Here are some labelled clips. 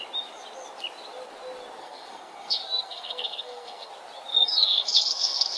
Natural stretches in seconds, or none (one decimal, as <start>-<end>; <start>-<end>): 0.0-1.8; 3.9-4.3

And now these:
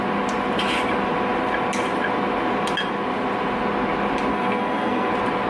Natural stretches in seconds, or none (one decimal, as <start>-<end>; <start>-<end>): 0.0-4.3; 5.1-5.5

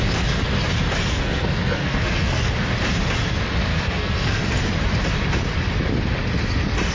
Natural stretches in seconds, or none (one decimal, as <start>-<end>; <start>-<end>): 0.0-1.1; 2.4-3.7; 4.4-6.9

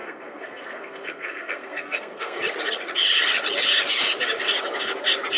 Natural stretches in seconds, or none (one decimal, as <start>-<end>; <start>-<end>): 2.4-5.4

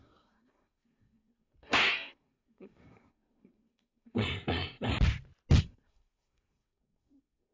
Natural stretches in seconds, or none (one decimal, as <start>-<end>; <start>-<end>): 4.9-5.6

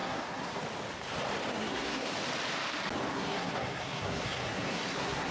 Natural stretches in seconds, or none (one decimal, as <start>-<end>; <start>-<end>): 0.6-1.5; 2.1-3.1